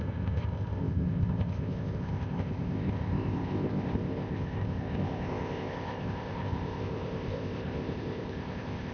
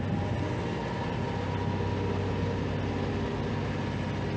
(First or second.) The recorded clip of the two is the second